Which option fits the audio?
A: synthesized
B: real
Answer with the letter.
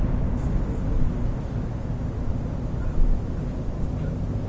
B